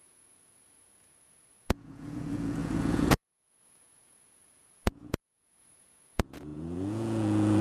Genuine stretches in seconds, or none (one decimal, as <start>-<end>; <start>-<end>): none